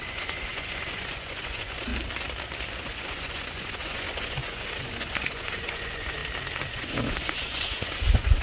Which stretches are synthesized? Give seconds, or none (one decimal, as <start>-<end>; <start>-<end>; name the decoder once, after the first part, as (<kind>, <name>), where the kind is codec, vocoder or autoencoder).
0.0-1.9 (vocoder, Vocos); 2.7-6.2; 6.7-8.4